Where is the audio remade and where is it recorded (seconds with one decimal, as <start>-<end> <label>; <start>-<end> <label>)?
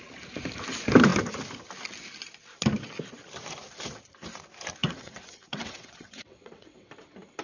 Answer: 0.0-4.8 recorded; 4.8-6.9 remade; 6.9-7.4 recorded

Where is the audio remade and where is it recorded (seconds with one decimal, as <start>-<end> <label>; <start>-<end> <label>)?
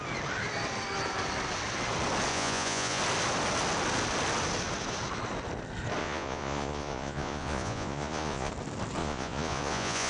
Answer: 0.0-2.3 recorded; 2.3-3.0 remade; 3.0-6.0 recorded; 6.0-8.5 remade; 8.5-9.0 recorded; 9.0-10.1 remade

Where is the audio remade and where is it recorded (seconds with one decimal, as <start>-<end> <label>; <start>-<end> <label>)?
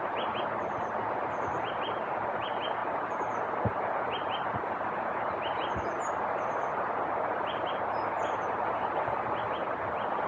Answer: 0.0-10.3 recorded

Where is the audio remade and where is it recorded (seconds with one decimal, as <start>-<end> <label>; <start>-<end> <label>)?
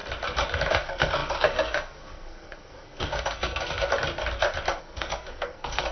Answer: 0.0-0.7 recorded; 0.7-3.9 remade; 3.9-4.8 recorded; 4.8-5.9 remade